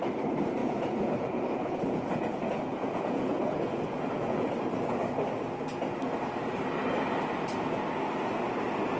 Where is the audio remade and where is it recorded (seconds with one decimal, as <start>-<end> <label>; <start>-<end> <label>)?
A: 0.0-0.6 recorded; 0.6-4.5 remade; 4.5-9.0 recorded